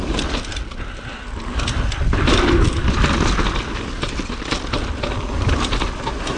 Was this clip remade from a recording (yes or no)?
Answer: no